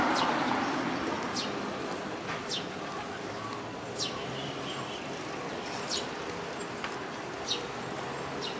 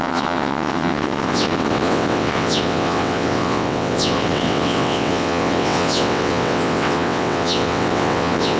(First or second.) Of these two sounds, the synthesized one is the second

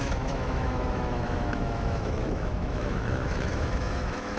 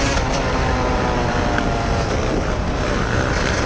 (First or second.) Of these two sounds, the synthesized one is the first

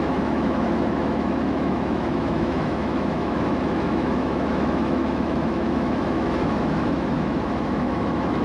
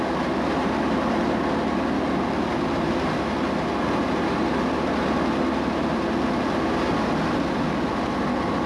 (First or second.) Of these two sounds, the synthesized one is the first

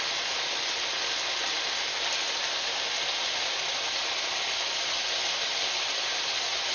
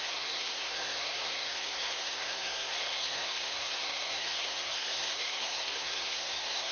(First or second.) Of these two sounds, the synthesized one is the second